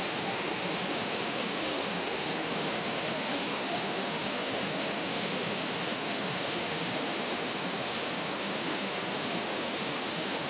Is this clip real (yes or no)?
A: no